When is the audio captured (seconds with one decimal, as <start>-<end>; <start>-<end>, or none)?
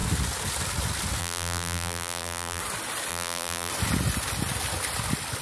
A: 0.0-1.2; 2.6-3.1; 3.7-5.4